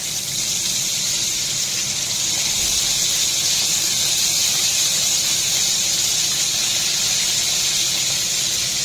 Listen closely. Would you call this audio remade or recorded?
recorded